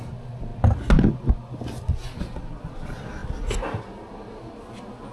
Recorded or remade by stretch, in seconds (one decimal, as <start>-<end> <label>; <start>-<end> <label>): 0.0-5.1 recorded